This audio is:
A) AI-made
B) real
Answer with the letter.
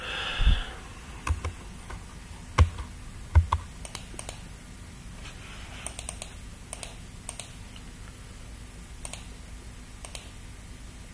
B